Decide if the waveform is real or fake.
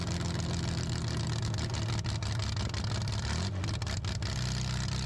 real